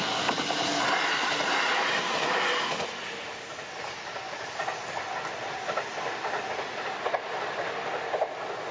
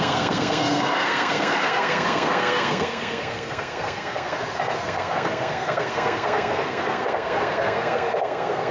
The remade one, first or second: second